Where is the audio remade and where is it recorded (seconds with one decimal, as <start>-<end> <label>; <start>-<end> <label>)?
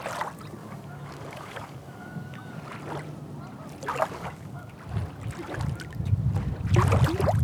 0.0-0.6 recorded; 0.6-2.6 remade; 2.6-3.9 recorded; 3.9-4.7 remade; 4.7-7.4 recorded